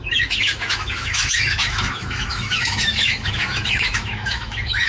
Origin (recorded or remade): remade